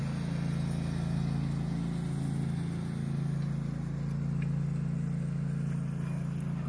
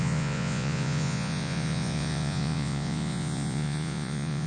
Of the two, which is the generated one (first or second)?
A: second